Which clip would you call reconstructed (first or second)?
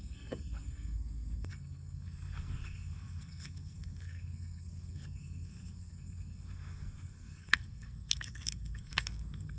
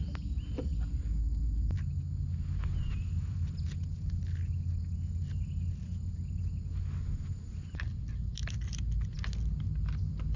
first